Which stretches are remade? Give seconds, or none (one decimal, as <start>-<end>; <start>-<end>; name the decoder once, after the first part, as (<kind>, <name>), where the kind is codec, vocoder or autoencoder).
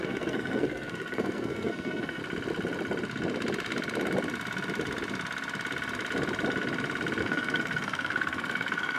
0.0-2.2 (codec, SNAC); 7.2-9.0